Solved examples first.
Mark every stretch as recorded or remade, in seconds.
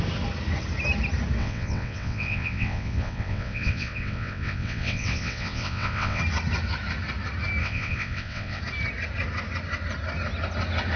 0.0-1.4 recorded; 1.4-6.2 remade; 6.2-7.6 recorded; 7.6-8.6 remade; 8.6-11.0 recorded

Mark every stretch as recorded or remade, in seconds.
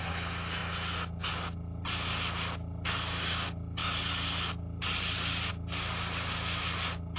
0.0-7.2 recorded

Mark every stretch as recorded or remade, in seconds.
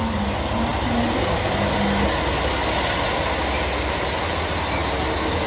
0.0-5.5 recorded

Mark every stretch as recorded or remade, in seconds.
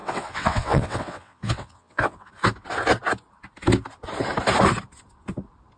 0.0-2.3 remade; 2.3-5.8 recorded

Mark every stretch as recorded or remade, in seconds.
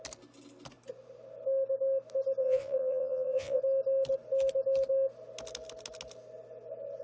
0.0-2.4 recorded; 2.4-3.6 remade; 3.6-7.0 recorded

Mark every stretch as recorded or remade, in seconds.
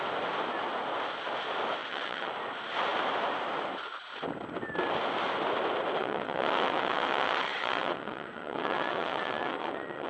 0.0-1.8 recorded; 1.8-2.3 remade; 2.3-6.0 recorded; 6.0-10.1 remade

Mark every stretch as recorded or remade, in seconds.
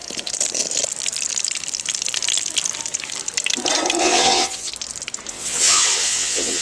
0.0-4.0 recorded; 4.0-4.7 remade; 4.7-5.3 recorded; 5.3-6.6 remade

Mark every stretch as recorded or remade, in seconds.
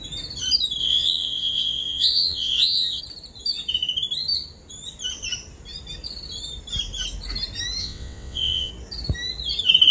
0.0-0.8 recorded; 0.8-3.0 remade; 3.0-7.8 recorded; 7.8-8.7 remade; 8.7-9.9 recorded